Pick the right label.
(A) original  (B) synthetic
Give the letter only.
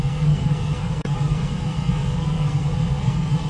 B